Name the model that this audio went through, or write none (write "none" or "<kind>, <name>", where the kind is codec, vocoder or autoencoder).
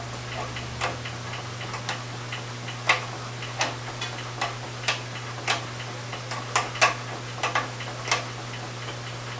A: none